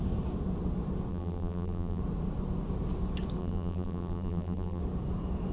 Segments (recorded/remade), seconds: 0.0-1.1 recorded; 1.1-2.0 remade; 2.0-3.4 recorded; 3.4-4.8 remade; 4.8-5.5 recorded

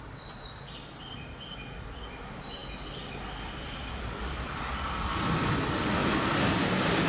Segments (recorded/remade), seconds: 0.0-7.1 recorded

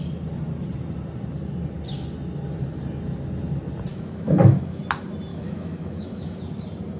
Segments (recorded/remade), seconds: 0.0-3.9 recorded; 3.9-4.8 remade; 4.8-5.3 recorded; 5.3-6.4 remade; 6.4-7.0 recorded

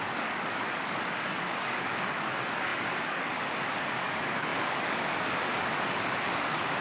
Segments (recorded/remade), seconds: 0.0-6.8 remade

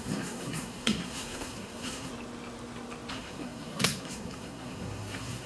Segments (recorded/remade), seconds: 0.0-2.1 remade; 2.1-3.1 recorded; 3.1-5.5 remade

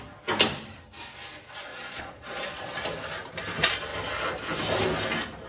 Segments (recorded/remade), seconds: 0.0-1.7 recorded; 1.7-2.6 remade; 2.6-5.5 recorded

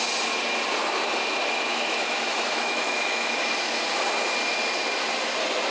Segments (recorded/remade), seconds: 0.0-1.7 recorded; 1.7-3.4 remade; 3.4-5.7 recorded